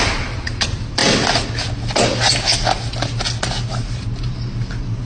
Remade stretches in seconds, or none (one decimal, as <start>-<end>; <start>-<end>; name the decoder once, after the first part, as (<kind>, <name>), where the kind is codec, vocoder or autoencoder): 0.0-1.0 (vocoder, BigVGAN v2); 3.5-5.1